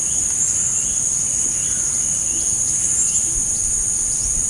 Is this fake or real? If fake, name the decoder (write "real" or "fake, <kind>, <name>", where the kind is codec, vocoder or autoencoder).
real